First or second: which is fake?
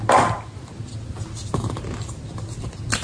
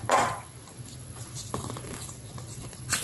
second